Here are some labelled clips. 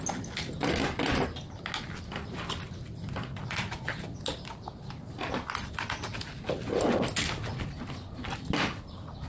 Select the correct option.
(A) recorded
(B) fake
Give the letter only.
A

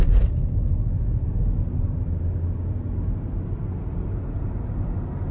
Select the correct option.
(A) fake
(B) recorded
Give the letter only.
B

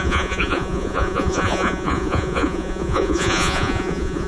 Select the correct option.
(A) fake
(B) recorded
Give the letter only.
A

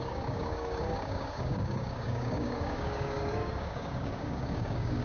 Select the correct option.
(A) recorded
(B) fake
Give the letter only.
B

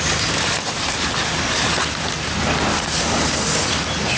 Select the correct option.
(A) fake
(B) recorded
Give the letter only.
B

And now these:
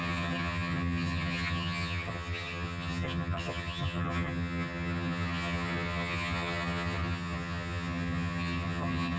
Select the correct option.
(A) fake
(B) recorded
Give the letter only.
A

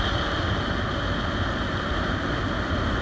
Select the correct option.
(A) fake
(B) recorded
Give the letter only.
B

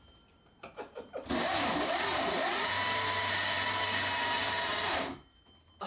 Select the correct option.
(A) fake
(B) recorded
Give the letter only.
A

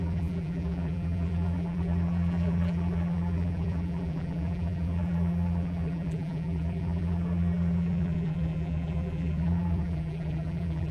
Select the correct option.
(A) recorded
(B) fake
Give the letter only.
B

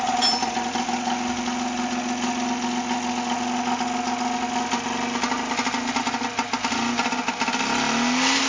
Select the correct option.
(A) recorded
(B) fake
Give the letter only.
A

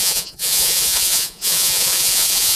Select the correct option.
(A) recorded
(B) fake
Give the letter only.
B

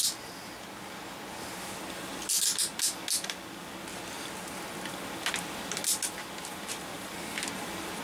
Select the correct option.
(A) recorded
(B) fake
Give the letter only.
A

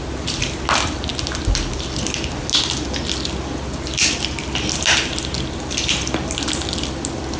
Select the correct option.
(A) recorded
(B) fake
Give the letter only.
A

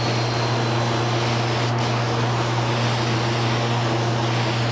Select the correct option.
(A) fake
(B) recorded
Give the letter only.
B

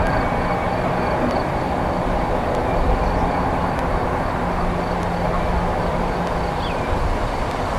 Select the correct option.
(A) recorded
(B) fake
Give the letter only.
A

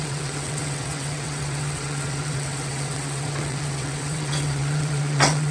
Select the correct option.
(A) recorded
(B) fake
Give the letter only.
B